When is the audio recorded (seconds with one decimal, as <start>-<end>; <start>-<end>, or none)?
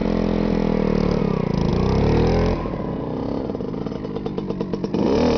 0.0-5.4